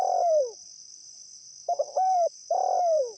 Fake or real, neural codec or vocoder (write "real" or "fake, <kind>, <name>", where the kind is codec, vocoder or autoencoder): fake, vocoder, BigVGAN v2